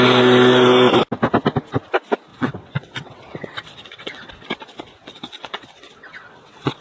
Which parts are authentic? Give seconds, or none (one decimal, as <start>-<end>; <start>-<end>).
0.0-2.3; 4.3-5.0